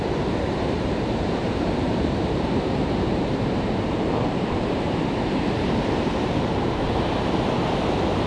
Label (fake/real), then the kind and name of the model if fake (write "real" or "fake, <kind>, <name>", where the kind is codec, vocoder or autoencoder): fake, vocoder, BigVGAN v2